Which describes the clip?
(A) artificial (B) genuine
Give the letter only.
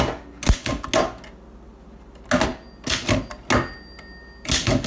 B